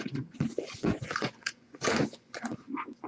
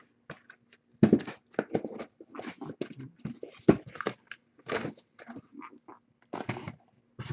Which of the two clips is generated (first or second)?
first